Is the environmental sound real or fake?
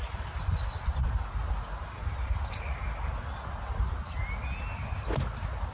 real